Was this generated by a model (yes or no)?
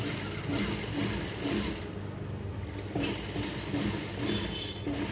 no